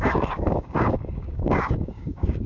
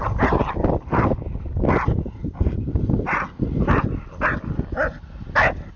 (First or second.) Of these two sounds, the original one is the second